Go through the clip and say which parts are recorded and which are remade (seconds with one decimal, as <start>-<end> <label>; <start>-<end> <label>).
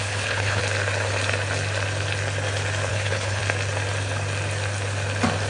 0.0-0.6 remade; 0.6-2.9 recorded; 2.9-3.4 remade; 3.4-5.5 recorded